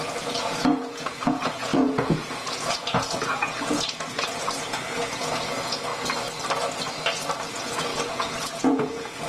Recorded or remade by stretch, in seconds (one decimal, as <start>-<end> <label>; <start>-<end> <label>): 0.0-5.9 remade; 5.9-7.5 recorded; 7.5-9.3 remade